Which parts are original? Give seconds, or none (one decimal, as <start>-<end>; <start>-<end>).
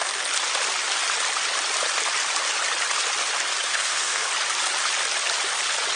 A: 0.0-3.7; 4.3-6.0